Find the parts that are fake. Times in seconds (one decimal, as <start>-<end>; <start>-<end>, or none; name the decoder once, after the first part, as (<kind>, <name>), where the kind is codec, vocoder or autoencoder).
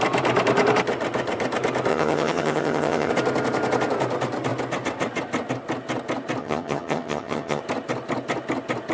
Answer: 1.9-3.1 (vocoder, HiFi-GAN); 6.4-7.6